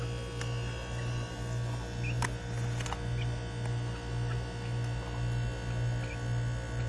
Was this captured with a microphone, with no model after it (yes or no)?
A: yes